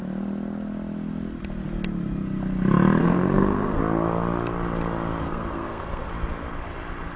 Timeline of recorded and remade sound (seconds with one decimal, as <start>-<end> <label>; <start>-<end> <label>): 0.0-3.0 recorded; 3.0-3.8 remade; 3.8-5.2 recorded; 5.2-6.1 remade; 6.1-7.2 recorded